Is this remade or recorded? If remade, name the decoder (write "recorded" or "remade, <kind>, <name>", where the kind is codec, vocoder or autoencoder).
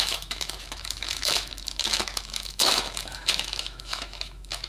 remade, autoencoder, DAC-VAE